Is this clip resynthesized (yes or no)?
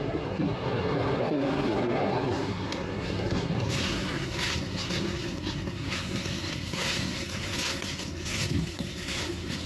yes